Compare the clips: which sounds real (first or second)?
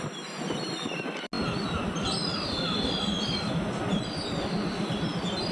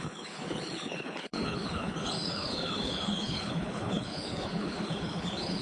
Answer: first